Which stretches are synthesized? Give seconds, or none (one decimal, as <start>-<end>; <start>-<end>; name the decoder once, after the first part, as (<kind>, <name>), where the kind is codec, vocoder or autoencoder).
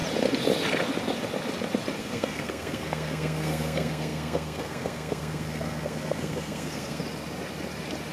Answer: 2.0-7.0 (codec, SNAC)